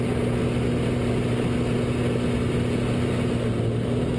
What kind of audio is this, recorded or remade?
recorded